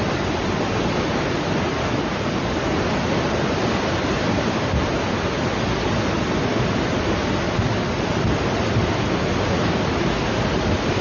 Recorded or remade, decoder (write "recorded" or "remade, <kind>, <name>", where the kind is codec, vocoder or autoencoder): recorded